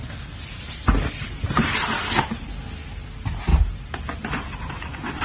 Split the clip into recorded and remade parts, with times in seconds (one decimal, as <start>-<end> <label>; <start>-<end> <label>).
0.0-5.2 recorded